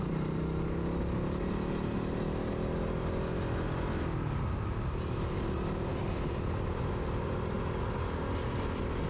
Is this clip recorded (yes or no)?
yes